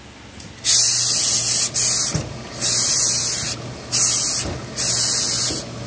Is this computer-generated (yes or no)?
no